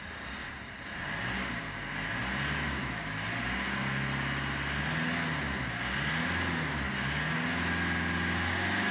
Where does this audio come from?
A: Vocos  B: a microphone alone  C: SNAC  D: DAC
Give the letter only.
B